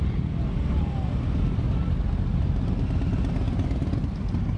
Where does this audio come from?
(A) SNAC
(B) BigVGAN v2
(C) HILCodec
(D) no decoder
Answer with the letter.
D